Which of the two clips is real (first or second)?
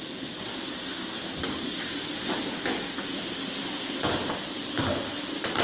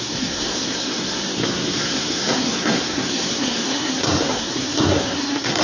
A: first